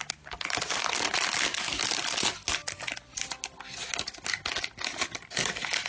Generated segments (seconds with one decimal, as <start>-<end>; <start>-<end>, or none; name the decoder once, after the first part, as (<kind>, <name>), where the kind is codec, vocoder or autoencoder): none